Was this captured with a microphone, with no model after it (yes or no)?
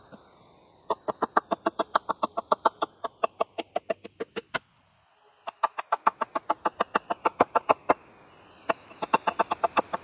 yes